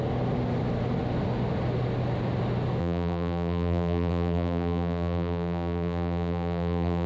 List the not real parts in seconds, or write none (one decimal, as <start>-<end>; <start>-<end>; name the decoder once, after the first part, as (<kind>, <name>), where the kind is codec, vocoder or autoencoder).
2.8-7.1 (vocoder, BigVGAN v2)